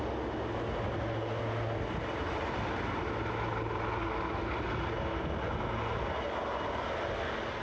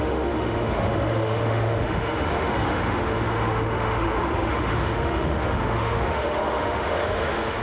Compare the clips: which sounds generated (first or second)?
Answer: second